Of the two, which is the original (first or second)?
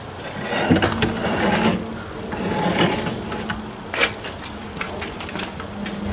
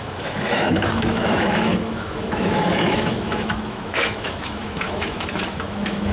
first